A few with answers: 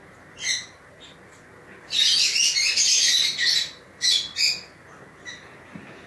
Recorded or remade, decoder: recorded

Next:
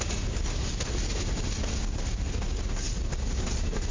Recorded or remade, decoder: recorded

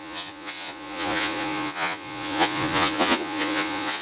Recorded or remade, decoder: remade, vocoder, Vocos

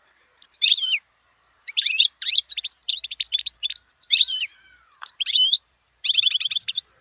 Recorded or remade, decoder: remade, vocoder, BigVGAN v2